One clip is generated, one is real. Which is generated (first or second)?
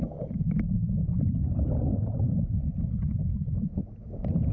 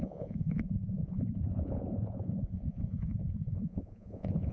second